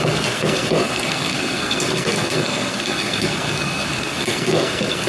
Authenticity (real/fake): fake